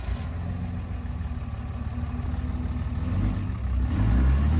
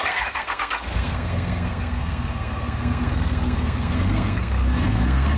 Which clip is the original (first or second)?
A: first